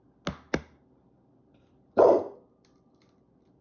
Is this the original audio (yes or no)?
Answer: yes